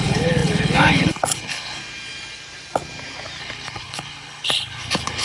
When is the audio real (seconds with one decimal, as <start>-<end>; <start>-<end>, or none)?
1.8-3.4

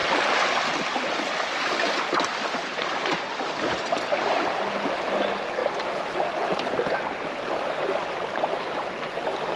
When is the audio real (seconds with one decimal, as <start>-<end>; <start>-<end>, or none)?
0.0-5.6; 7.0-9.6

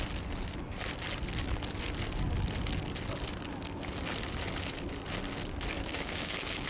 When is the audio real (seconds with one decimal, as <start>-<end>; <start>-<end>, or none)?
0.0-5.9

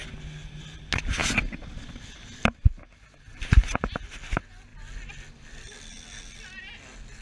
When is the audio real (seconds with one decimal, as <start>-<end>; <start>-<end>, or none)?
0.0-3.3; 3.9-7.2

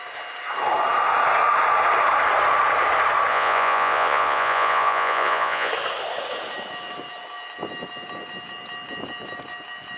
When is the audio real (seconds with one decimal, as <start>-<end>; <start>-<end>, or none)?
0.0-3.3; 5.7-10.0

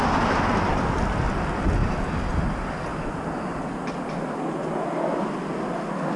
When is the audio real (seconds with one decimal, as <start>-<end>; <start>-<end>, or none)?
0.0-6.2

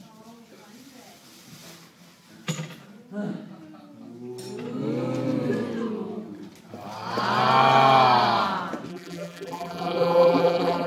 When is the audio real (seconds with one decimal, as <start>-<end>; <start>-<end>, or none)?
0.0-8.9

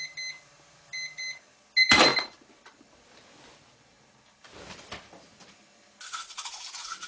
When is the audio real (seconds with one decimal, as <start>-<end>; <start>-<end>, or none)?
0.0-7.1